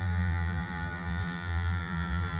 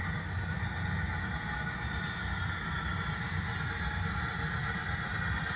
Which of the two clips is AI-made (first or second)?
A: first